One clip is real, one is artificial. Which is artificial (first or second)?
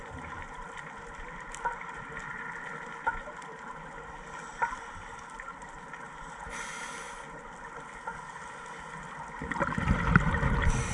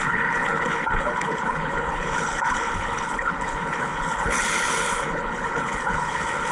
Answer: second